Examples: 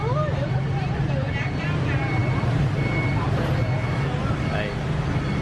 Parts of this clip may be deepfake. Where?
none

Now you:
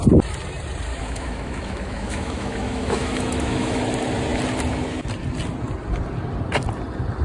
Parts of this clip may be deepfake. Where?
0.9-3.8 (autoencoder, DAC-VAE)

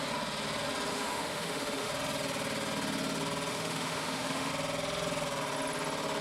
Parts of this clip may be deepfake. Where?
0.9-1.9 (autoencoder, DAC-VAE); 3.5-4.5